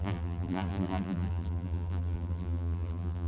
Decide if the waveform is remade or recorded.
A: remade